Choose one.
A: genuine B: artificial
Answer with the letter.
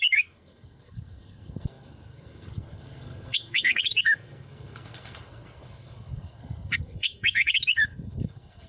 B